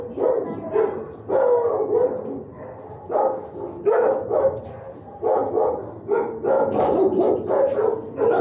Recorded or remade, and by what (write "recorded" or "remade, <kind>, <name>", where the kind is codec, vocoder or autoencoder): recorded